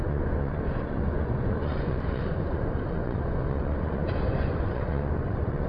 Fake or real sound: fake